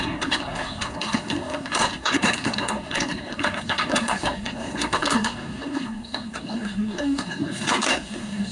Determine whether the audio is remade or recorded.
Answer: remade